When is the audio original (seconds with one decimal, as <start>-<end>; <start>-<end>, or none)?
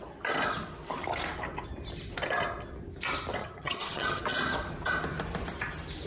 0.0-3.4; 4.2-6.1